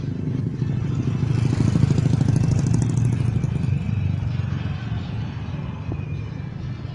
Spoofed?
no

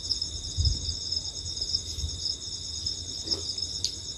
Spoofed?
no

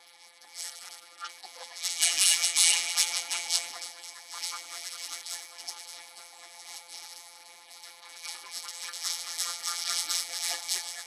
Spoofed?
yes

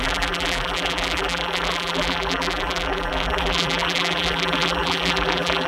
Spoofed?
yes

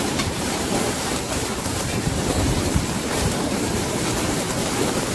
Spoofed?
yes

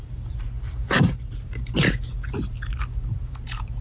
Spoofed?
yes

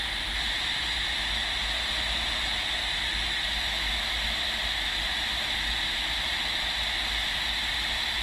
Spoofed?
no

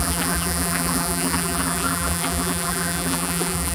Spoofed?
yes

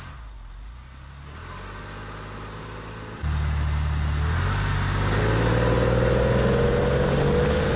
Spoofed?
no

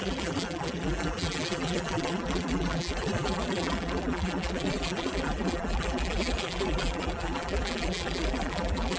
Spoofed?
yes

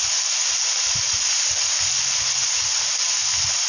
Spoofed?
no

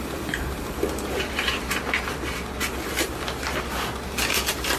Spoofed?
no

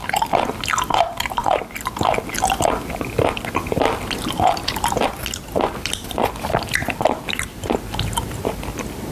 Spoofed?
no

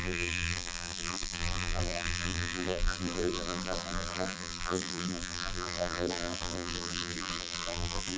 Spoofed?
yes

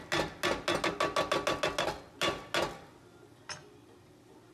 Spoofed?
no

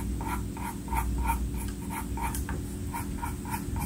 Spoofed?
no